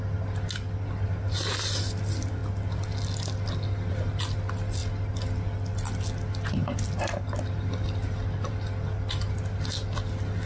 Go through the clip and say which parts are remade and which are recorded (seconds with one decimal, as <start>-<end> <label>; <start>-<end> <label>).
0.0-10.5 recorded